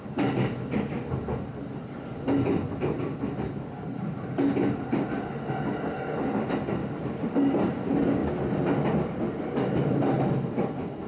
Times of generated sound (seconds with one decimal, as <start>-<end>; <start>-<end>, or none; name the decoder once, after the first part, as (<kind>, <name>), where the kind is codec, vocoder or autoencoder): none